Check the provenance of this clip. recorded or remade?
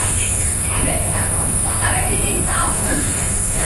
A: remade